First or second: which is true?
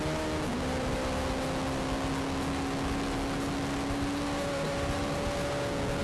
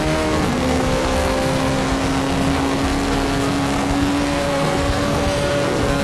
first